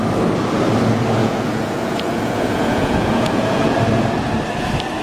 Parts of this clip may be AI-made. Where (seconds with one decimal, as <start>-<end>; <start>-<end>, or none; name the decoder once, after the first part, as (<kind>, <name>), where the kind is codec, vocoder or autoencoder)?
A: 1.2-3.8 (vocoder, Vocos)